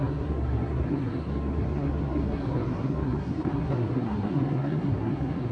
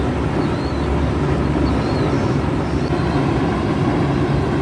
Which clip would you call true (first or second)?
second